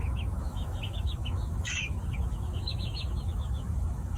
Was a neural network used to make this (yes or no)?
yes